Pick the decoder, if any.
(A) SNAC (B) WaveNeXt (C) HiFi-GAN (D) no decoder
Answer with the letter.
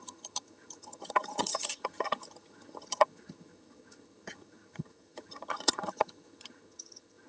C